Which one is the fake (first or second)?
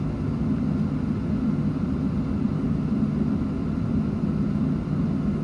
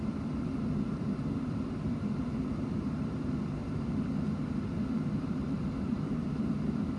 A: second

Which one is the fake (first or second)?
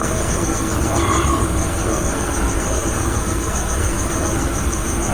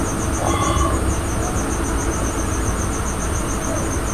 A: first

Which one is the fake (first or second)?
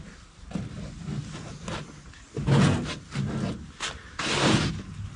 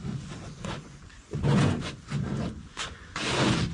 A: second